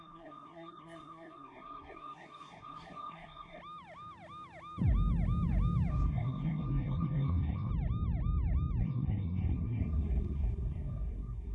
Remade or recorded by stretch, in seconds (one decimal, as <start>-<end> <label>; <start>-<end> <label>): 0.0-3.6 remade; 3.6-5.9 recorded; 5.9-7.7 remade; 7.7-8.8 recorded; 8.8-11.5 remade